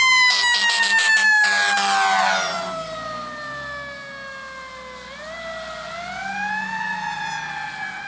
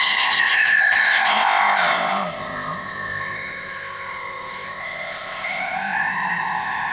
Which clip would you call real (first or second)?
first